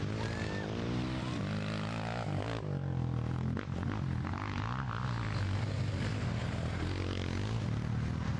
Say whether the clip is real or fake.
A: real